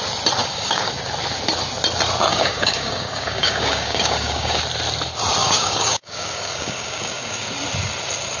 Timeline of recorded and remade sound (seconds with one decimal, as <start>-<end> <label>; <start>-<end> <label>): 0.0-0.4 recorded; 0.4-0.9 remade; 0.9-2.3 recorded; 2.3-4.6 remade; 4.6-5.4 recorded; 5.4-7.5 remade; 7.5-8.4 recorded